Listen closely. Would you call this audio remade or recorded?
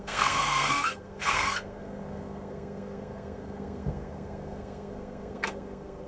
remade